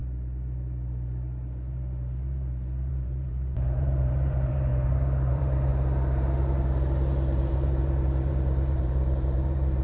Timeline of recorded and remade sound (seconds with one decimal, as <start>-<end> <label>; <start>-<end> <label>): 0.0-2.9 recorded; 2.9-4.7 remade; 4.7-5.3 recorded; 5.3-5.7 remade; 5.7-7.5 recorded; 7.5-9.8 remade